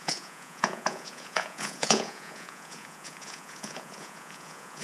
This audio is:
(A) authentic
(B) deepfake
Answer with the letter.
B